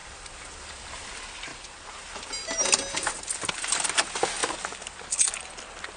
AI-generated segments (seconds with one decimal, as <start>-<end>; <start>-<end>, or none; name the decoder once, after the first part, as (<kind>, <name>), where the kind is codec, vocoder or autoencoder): none